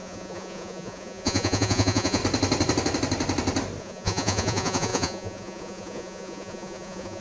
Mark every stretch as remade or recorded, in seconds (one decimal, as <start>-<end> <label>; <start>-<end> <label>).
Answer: 0.0-2.2 remade; 2.2-3.8 recorded; 3.8-7.2 remade